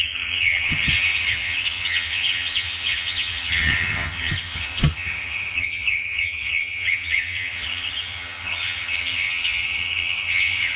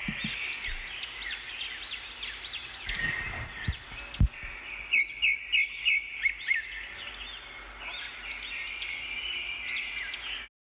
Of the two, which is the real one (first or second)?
second